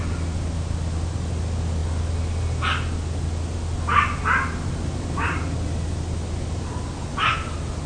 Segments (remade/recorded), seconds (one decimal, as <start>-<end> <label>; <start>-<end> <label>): 0.0-7.9 recorded